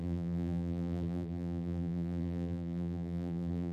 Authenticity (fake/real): fake